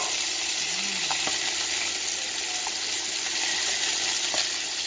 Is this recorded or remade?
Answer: recorded